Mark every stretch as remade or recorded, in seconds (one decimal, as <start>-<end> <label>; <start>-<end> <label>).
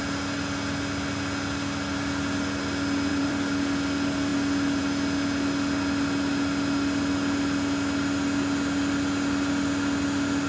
0.0-3.1 recorded; 3.1-3.6 remade; 3.6-10.5 recorded